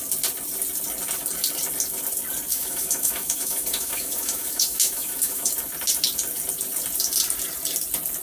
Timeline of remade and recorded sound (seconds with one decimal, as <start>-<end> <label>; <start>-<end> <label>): 0.0-2.5 recorded; 2.5-5.5 remade; 5.5-8.2 recorded